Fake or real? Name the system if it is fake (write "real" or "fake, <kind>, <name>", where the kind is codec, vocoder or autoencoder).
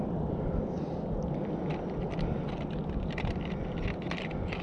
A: real